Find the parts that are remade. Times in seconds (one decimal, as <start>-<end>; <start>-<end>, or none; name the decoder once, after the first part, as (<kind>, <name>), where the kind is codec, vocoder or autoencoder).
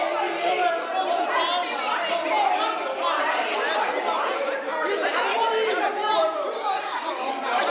none